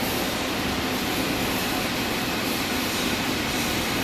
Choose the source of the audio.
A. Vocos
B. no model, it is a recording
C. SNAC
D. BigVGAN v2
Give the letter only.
B